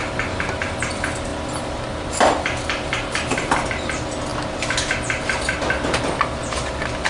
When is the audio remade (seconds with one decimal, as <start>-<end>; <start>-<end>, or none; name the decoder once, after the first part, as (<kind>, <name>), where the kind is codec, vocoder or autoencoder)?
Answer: 1.3-3.7 (vocoder, BigVGAN v2)

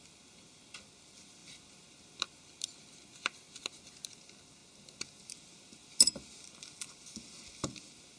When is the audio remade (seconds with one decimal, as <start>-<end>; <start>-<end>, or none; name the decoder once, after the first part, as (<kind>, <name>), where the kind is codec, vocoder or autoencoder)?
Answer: none